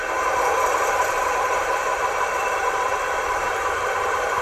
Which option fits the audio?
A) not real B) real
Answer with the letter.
A